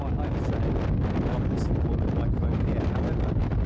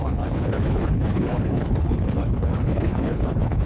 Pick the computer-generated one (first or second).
second